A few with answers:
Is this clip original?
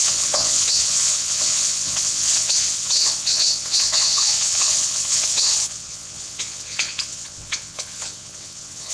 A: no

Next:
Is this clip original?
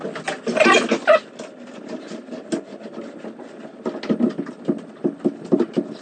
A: yes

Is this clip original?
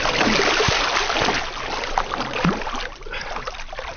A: yes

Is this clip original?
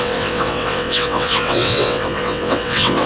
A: no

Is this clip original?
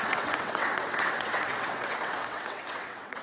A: no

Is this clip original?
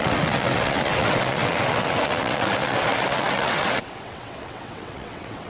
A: no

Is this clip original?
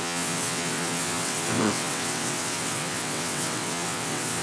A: no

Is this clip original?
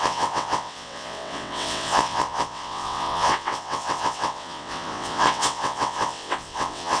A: no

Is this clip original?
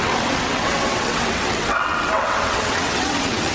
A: no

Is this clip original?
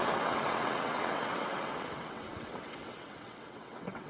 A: no